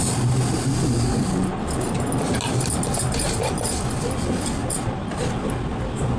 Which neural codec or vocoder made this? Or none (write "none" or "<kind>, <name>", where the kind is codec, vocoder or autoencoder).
none